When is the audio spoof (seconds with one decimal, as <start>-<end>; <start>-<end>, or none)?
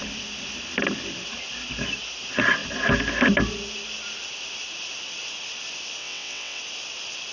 6.0-6.6